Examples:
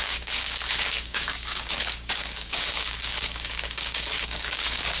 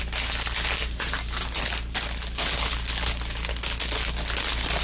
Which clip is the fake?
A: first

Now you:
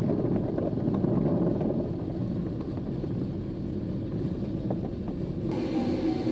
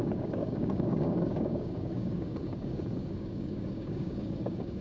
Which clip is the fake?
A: second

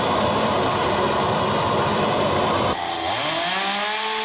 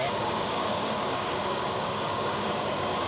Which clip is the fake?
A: second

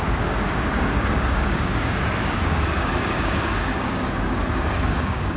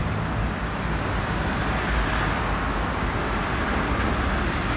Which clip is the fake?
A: first